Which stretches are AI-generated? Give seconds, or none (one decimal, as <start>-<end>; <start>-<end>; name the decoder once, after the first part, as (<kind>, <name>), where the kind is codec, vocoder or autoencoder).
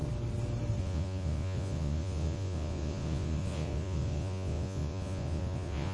0.8-5.9 (vocoder, Vocos)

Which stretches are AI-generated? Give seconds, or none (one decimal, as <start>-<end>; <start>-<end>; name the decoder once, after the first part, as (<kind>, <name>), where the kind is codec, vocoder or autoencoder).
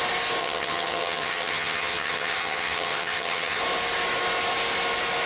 0.4-3.6 (vocoder, HiFi-GAN)